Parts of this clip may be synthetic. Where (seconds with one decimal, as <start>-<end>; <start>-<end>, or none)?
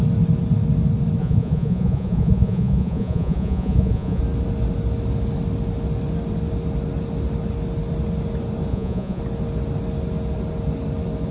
1.2-4.2; 8.7-9.2